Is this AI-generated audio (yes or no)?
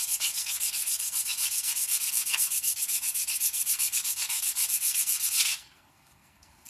yes